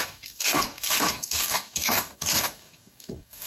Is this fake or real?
fake